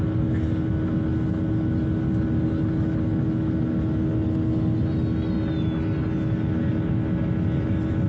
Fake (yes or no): no